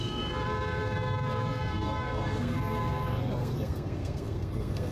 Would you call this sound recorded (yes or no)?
no